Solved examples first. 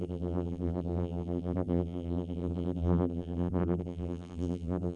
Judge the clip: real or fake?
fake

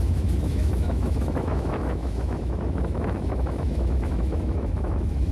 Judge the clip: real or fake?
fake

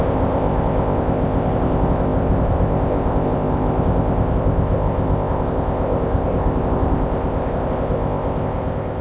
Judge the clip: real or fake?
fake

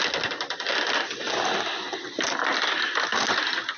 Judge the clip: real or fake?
real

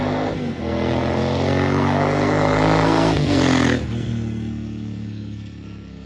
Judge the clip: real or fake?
fake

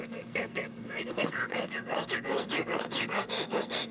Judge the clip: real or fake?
fake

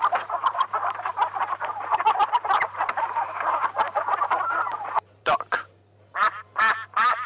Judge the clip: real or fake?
fake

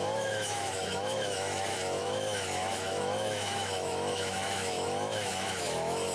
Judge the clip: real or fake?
fake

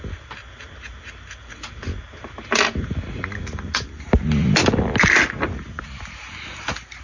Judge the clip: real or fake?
real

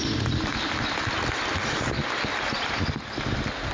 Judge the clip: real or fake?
real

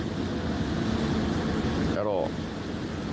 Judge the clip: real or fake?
real